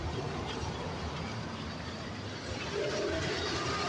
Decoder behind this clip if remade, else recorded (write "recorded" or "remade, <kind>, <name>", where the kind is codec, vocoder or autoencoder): remade, vocoder, BigVGAN v2